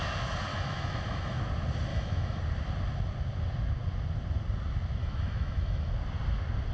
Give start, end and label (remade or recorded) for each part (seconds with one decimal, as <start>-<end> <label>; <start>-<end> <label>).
0.0-0.5 recorded; 0.5-1.4 remade; 1.4-1.9 recorded; 1.9-2.4 remade; 2.4-5.0 recorded; 5.0-5.9 remade; 5.9-6.7 recorded